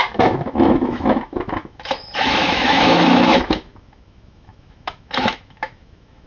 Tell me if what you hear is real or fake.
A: fake